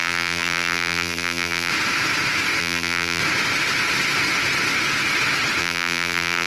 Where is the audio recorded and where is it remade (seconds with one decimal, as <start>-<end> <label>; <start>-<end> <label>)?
0.0-1.7 remade; 1.7-2.6 recorded; 2.6-3.2 remade; 3.2-5.6 recorded; 5.6-6.5 remade